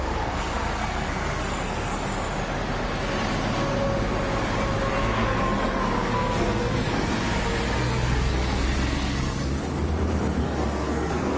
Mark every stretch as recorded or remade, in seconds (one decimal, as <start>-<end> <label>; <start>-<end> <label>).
0.0-2.0 remade; 2.0-4.9 recorded; 4.9-7.1 remade; 7.1-7.8 recorded; 7.8-9.6 remade; 9.6-10.4 recorded; 10.4-11.4 remade